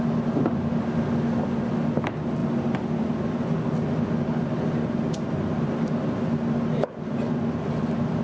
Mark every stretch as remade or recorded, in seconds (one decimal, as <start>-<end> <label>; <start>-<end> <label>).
0.0-8.2 recorded